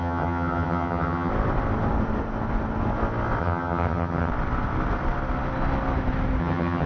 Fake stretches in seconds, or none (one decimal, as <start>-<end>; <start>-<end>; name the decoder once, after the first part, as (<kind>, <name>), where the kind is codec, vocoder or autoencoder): 0.0-1.3 (vocoder, HiFi-GAN); 3.4-4.3; 6.4-6.9